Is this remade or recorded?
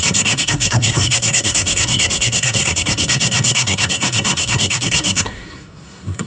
remade